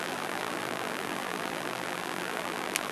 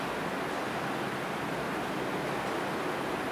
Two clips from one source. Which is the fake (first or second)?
first